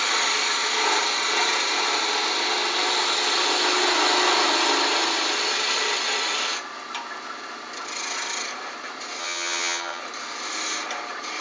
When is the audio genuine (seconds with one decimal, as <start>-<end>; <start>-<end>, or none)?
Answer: 0.0-9.2; 10.0-11.4